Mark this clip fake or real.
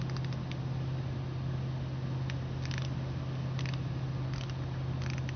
real